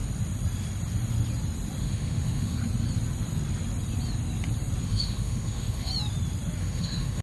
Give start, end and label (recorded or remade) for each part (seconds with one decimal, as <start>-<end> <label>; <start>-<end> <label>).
0.0-1.8 recorded; 1.8-2.6 remade; 2.6-4.8 recorded; 4.8-5.9 remade; 5.9-6.6 recorded; 6.6-7.2 remade